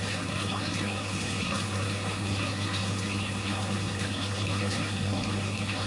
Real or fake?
fake